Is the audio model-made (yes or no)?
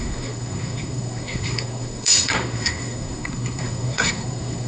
yes